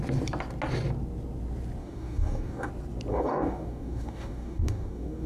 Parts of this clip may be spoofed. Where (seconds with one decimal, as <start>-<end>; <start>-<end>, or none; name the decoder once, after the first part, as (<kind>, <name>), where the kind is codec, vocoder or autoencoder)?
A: 1.8-2.7 (codec, DAC); 3.1-5.3